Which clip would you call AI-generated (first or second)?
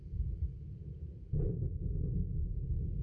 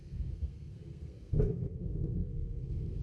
second